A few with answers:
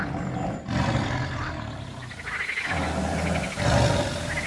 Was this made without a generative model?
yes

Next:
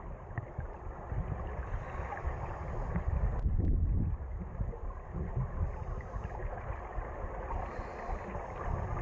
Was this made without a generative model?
yes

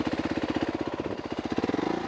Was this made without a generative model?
yes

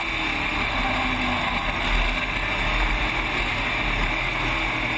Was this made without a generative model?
yes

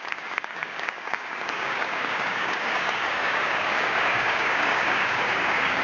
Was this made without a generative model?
no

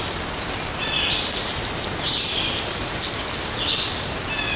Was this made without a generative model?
yes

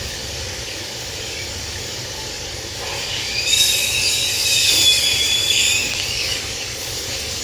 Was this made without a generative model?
no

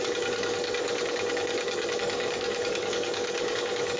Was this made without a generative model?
no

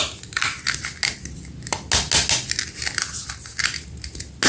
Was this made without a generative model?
yes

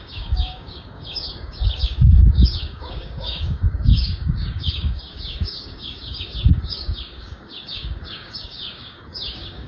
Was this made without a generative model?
no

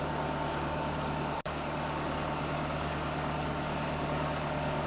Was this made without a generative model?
no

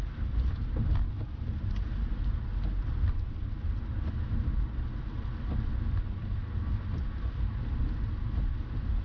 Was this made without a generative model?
yes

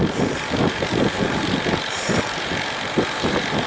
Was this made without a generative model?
yes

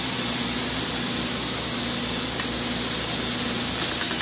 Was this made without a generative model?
yes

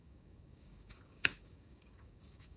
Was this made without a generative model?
no